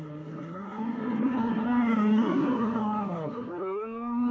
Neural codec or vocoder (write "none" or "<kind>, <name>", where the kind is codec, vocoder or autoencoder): codec, SNAC